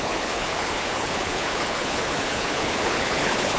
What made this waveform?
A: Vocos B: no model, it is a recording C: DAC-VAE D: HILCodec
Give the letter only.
D